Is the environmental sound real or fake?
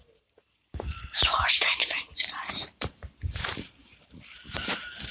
fake